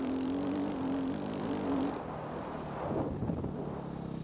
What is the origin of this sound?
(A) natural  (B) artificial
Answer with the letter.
A